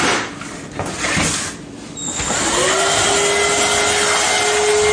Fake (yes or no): no